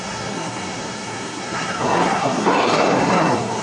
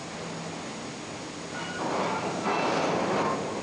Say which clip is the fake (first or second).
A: first